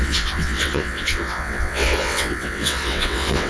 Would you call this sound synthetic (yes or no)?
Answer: yes